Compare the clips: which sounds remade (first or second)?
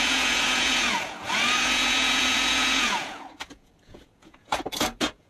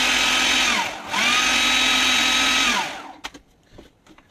first